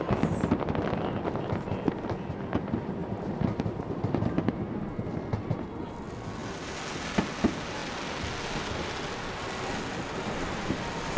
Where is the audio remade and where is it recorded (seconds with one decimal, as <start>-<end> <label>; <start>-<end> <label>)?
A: 0.0-3.0 recorded; 3.0-4.5 remade; 4.5-11.2 recorded